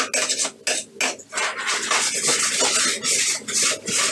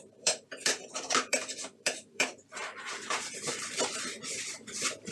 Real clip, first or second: first